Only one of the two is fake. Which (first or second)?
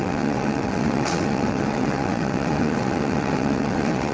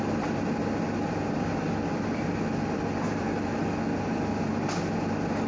first